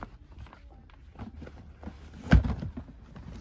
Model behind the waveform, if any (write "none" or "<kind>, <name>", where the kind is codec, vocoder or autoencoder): none